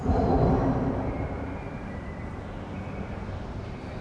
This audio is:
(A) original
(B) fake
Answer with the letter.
B